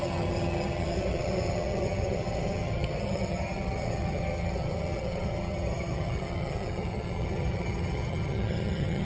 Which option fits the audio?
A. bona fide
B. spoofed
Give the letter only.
B